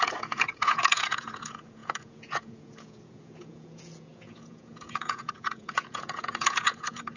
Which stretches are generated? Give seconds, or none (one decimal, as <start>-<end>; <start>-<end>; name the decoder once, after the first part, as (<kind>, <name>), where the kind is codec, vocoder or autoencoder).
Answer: 0.0-7.2 (vocoder, Vocos)